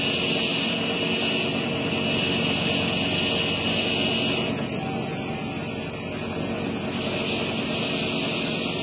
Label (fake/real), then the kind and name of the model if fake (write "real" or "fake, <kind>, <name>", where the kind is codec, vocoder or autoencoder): real